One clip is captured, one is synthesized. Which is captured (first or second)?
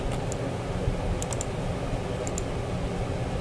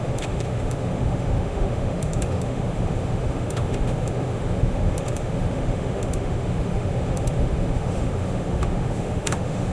first